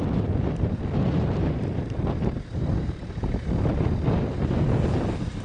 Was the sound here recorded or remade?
recorded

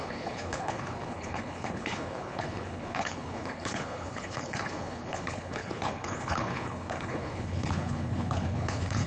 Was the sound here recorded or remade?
remade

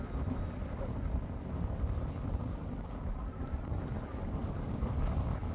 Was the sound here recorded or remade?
recorded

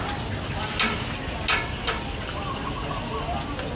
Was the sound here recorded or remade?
recorded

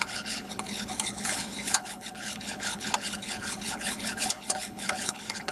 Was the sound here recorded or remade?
remade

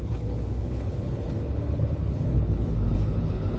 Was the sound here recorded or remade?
remade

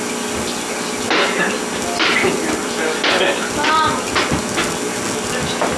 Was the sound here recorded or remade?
recorded